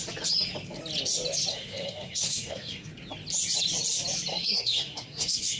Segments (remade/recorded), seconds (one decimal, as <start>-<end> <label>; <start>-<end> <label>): 0.0-1.5 recorded; 1.5-2.9 remade; 2.9-4.3 recorded; 4.3-5.6 remade